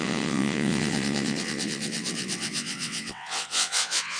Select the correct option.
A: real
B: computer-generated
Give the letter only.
B